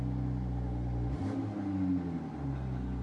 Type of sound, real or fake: real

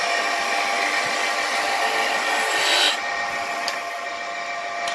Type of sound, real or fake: real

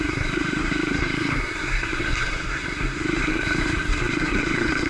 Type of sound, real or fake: fake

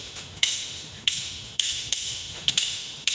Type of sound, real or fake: fake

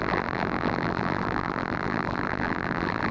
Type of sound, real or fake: fake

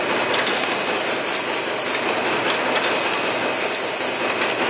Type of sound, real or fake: real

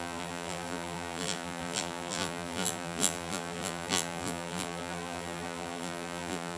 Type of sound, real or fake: fake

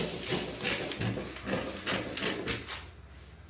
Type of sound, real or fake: real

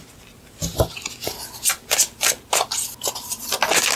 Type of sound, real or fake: real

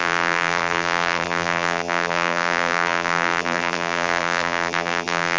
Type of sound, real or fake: fake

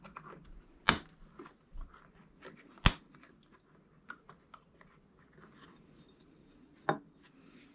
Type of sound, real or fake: real